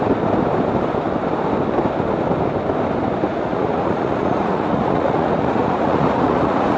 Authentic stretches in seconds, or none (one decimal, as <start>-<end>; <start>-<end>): 0.0-3.3